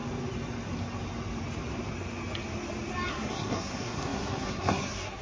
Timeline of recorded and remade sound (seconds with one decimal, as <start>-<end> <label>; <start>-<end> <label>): 0.0-3.1 recorded; 3.1-5.2 remade